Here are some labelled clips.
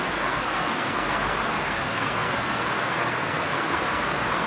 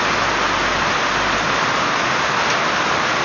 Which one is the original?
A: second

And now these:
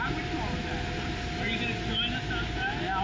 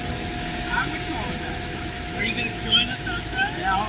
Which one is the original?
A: first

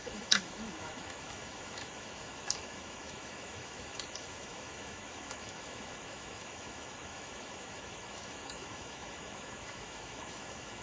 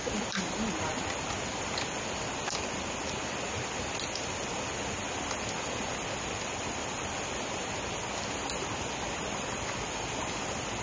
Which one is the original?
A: second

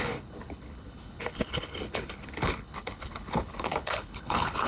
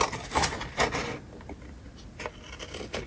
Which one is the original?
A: second